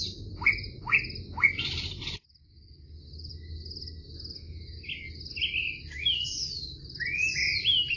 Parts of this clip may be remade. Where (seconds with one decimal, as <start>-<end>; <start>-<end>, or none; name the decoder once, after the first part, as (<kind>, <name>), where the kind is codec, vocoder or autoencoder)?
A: none